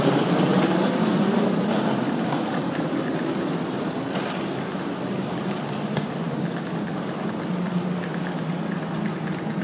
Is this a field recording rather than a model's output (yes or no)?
yes